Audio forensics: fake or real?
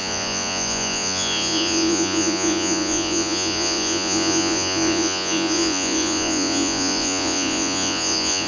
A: fake